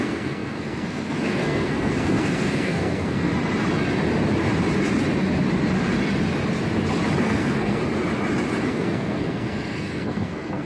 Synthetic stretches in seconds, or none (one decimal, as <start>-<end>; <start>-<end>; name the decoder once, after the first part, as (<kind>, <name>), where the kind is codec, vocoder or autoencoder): 0.0-3.3 (codec, SNAC); 7.2-7.8; 8.6-10.7